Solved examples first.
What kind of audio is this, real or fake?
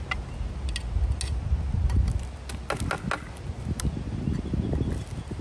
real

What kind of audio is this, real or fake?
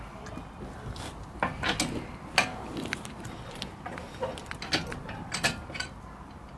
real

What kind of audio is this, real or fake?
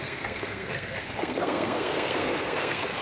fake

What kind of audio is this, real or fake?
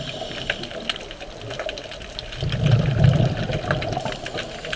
real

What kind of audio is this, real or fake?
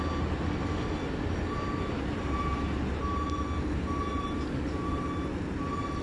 real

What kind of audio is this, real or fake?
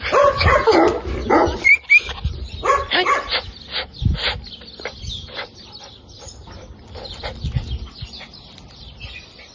real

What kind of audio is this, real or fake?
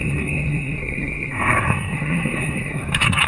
fake